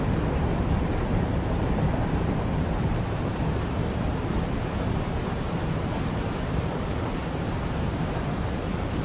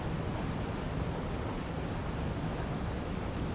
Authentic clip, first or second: second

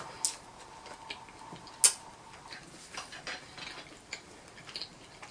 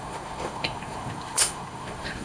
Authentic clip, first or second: first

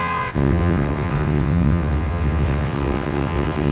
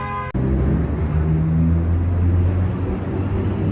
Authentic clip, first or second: second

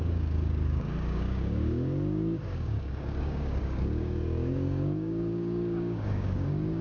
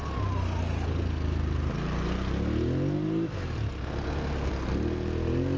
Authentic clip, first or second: second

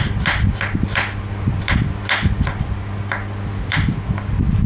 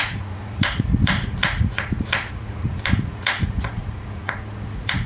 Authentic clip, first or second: first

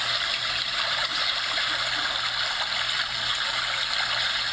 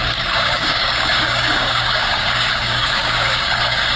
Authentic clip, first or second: first